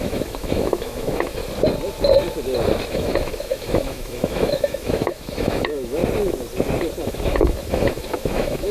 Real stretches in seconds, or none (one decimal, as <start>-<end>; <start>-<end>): 1.4-2.9; 6.0-7.0